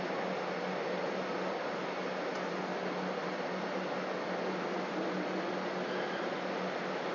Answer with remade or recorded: recorded